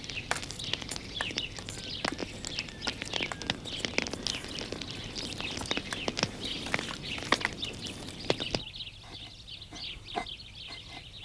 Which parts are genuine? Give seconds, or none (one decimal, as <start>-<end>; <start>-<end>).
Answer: 0.0-11.2

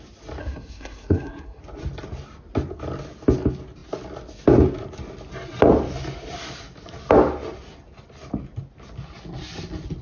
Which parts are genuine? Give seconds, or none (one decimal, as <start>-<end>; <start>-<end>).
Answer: 0.0-0.4; 1.6-10.0